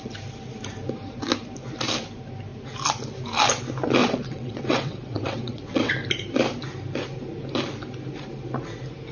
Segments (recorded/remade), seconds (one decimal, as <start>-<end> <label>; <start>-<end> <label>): 0.0-4.0 recorded; 4.0-5.9 remade; 5.9-9.1 recorded

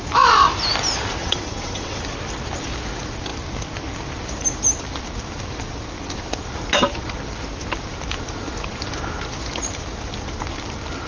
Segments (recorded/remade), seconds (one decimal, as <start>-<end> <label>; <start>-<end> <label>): 0.0-1.2 recorded; 1.2-2.0 remade; 2.0-11.1 recorded

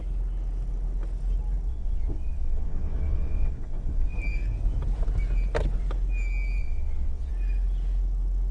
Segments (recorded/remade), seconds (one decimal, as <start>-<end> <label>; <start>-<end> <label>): 0.0-1.7 recorded; 1.7-4.2 remade; 4.2-6.6 recorded; 6.6-7.3 remade; 7.3-8.5 recorded

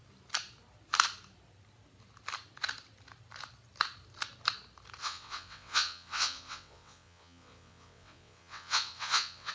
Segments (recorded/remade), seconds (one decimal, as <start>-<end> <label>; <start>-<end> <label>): 0.0-5.0 recorded; 5.0-9.5 remade

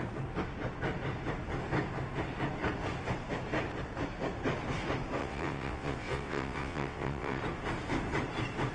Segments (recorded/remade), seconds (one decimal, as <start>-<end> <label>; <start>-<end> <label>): 0.0-5.2 recorded; 5.2-7.4 remade; 7.4-8.7 recorded

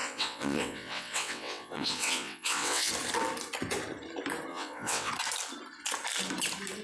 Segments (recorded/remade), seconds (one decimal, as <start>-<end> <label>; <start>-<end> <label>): 0.0-2.9 remade; 2.9-4.5 recorded; 4.5-5.1 remade; 5.1-6.8 recorded